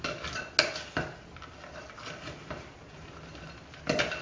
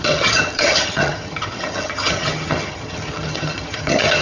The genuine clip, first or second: first